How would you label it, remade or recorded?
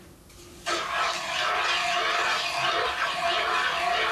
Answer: recorded